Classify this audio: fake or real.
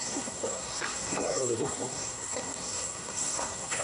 fake